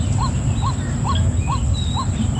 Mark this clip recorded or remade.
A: recorded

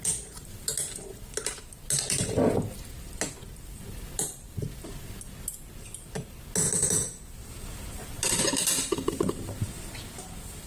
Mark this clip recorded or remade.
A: recorded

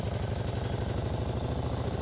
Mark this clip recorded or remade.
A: recorded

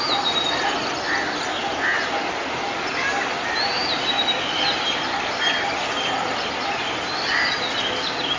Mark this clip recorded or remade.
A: recorded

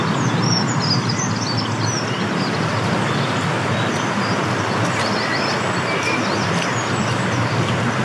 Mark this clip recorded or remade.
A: recorded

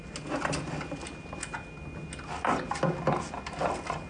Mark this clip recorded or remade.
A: recorded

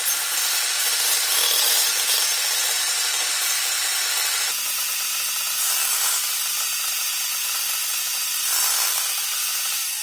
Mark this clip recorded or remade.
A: recorded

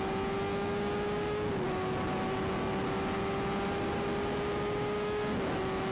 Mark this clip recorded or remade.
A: recorded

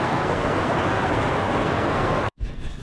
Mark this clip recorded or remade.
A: remade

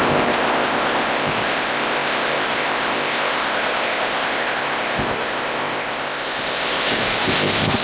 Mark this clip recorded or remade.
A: remade